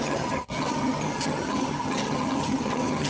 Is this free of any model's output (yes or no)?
no